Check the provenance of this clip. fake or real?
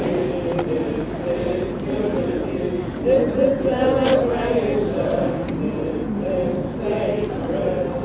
real